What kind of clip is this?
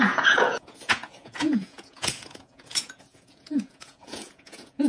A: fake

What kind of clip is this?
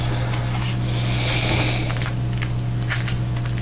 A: real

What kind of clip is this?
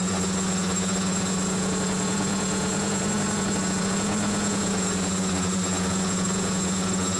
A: fake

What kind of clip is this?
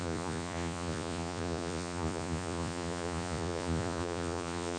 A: fake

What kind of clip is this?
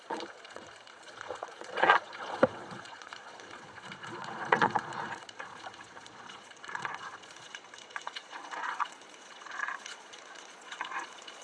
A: fake